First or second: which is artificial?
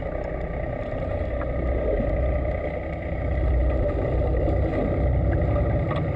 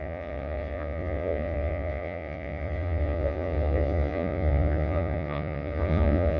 second